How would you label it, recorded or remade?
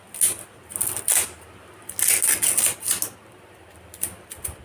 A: recorded